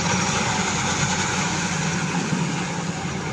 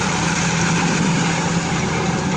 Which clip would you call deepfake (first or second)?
first